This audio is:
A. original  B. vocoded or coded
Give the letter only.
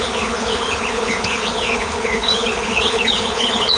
B